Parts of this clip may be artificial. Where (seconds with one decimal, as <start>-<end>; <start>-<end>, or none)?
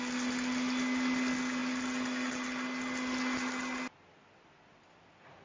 none